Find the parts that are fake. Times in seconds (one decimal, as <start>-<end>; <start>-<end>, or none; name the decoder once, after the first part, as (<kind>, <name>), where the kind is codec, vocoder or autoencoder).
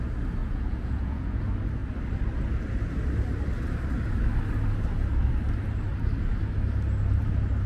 0.4-1.4 (vocoder, Vocos)